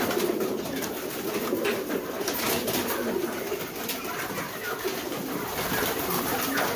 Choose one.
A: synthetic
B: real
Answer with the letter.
B